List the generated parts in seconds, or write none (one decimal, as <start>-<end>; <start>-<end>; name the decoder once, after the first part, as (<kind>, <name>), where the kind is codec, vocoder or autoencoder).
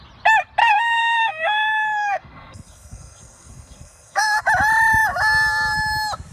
0.6-4.4 (codec, SNAC)